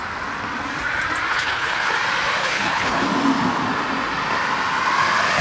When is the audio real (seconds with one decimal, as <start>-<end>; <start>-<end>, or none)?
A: 0.0-1.3; 1.9-2.4; 3.0-5.4